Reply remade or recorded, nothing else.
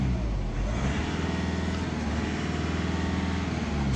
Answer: recorded